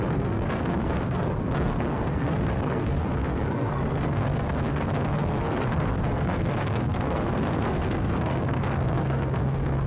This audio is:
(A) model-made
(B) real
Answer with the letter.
A